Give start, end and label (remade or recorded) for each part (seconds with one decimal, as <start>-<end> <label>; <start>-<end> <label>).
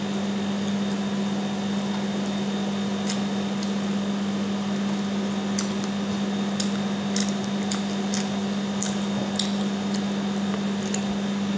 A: 0.0-11.6 recorded